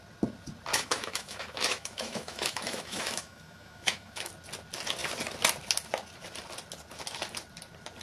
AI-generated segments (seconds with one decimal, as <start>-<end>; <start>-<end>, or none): 0.7-4.3

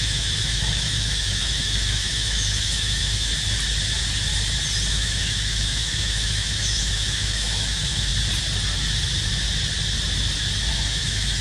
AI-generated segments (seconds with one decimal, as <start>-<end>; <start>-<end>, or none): 0.0-3.3; 4.9-8.1; 10.7-11.4